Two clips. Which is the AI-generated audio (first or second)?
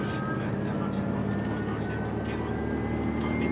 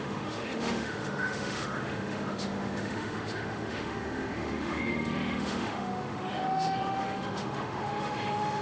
second